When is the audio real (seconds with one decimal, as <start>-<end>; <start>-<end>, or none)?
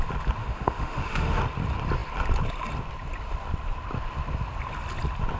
0.0-0.4; 1.4-5.4